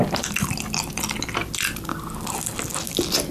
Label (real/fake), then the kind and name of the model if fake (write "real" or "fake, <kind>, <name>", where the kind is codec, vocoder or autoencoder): real